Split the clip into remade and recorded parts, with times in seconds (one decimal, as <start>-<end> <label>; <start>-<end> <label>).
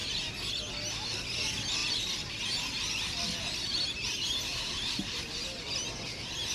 0.0-1.8 recorded; 1.8-2.4 remade; 2.4-4.5 recorded; 4.5-5.2 remade; 5.2-6.5 recorded